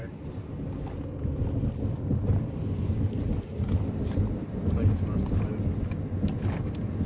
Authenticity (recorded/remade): recorded